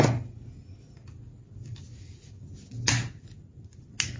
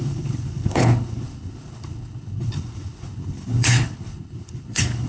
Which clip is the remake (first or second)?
second